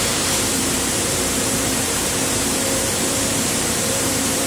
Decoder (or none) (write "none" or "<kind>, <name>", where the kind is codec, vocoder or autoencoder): vocoder, BigVGAN v2